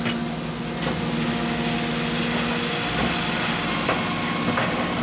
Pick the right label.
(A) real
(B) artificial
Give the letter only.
A